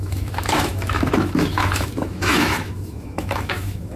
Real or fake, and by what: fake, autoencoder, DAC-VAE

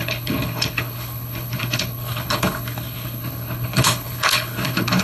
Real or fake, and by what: fake, codec, HILCodec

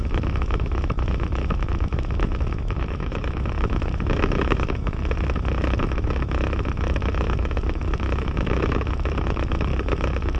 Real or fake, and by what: fake, autoencoder, DAC-VAE